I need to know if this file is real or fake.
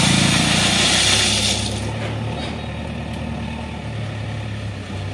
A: real